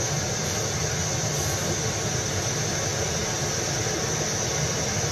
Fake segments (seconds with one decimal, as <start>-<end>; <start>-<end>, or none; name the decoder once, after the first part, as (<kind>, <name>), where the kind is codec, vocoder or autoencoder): none